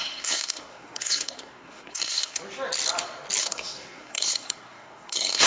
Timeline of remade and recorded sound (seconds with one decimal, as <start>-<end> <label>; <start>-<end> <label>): 0.0-2.4 remade; 2.4-3.4 recorded; 3.4-5.5 remade